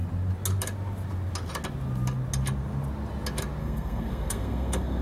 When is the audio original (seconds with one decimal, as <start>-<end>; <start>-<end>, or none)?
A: 0.0-3.6